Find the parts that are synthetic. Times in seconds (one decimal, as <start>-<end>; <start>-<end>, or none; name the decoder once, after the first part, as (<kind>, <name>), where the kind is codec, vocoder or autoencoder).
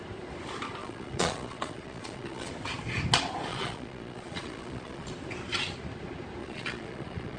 0.8-2.5 (vocoder, Vocos); 3.5-5.1; 6.4-7.4